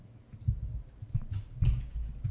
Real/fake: real